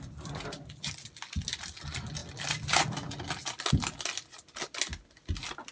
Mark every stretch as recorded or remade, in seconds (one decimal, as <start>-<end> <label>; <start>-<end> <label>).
0.0-5.7 recorded